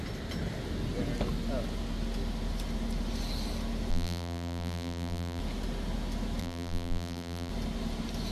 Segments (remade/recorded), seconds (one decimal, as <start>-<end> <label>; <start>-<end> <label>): 0.0-3.9 recorded; 3.9-5.4 remade; 5.4-6.4 recorded; 6.4-7.5 remade; 7.5-8.3 recorded